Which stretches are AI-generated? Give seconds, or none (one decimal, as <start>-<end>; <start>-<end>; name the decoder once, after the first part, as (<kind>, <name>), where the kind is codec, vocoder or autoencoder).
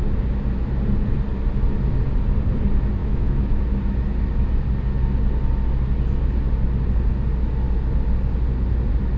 3.0-3.6 (autoencoder, DAC-VAE)